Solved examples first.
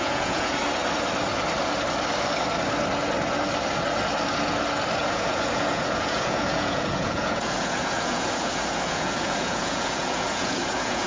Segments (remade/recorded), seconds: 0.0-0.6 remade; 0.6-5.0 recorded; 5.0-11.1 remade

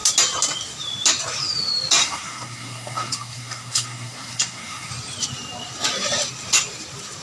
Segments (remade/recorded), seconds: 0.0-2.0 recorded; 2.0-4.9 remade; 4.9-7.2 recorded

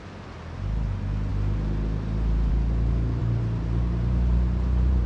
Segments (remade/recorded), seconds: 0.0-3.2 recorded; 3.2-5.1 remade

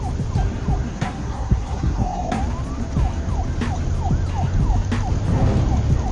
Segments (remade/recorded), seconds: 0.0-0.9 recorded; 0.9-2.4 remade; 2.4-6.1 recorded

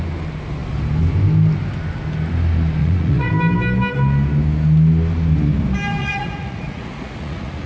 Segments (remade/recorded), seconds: 0.0-2.8 recorded; 2.8-3.3 remade; 3.3-6.0 recorded; 6.0-7.7 remade

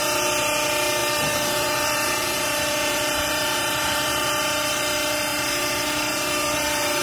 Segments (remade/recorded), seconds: 0.0-1.0 recorded; 1.0-4.7 remade; 4.7-5.3 recorded; 5.3-7.0 remade

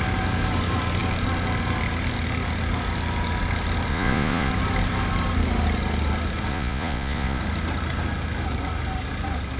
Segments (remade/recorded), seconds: 0.0-3.9 recorded; 3.9-4.5 remade; 4.5-6.5 recorded; 6.5-7.4 remade; 7.4-9.6 recorded

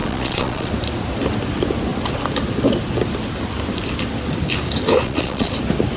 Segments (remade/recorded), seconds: 0.0-0.7 remade; 0.7-5.0 recorded; 5.0-5.5 remade; 5.5-6.0 recorded